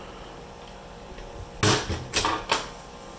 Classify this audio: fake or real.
real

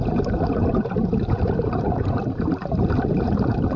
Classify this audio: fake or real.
fake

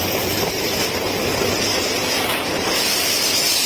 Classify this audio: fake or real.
real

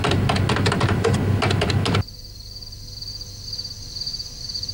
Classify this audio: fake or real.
real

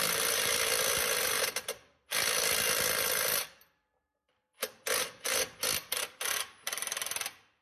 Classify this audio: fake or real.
fake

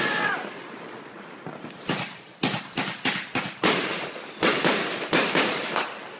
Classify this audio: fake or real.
real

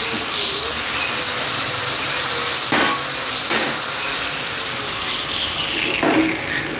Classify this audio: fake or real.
real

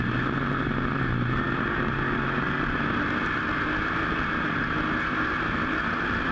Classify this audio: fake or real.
real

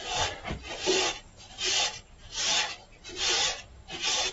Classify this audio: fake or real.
real